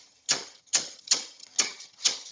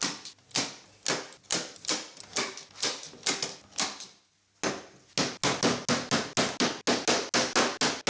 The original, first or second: second